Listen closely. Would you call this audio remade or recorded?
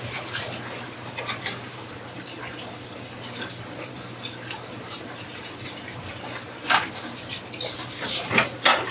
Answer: remade